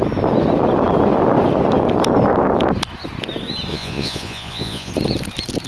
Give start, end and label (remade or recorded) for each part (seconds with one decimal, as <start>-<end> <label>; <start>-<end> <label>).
0.0-3.7 recorded; 3.7-4.9 remade; 4.9-5.7 recorded